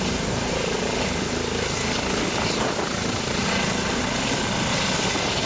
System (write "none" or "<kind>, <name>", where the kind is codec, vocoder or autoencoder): none